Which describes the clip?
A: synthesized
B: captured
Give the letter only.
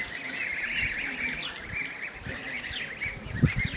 B